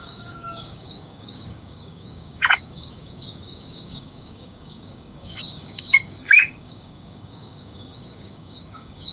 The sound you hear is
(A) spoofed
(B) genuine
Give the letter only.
A